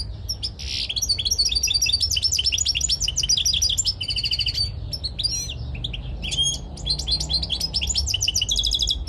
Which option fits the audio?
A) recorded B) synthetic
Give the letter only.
A